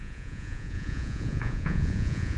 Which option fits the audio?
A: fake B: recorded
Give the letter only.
A